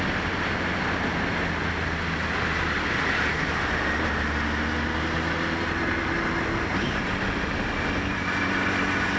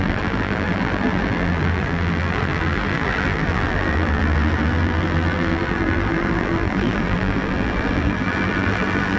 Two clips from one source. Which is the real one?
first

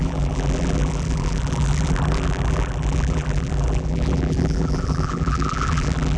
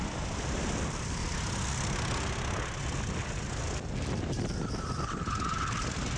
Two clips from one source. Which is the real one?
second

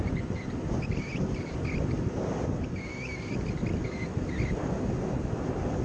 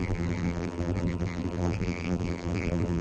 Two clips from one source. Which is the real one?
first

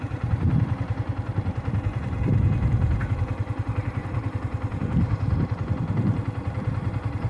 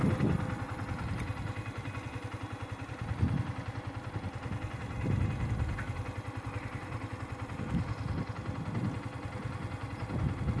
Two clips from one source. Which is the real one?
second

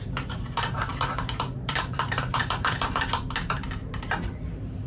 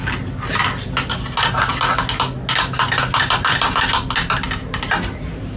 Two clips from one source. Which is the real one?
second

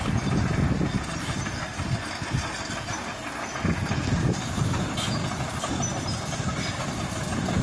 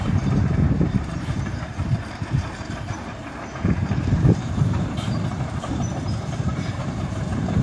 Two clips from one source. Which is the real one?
first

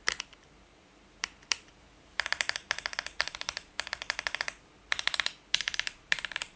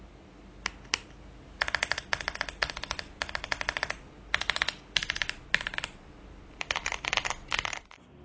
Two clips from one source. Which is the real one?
second